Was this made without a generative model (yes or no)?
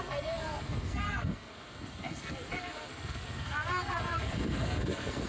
no